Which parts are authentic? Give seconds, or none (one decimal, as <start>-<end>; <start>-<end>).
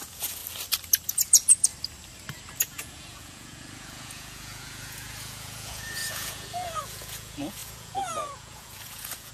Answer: 0.4-1.1; 1.7-2.6